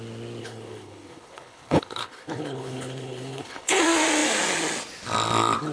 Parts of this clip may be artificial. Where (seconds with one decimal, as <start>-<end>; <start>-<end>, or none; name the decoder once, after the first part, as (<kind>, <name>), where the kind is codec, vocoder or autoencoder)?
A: 0.4-3.8 (codec, HILCodec)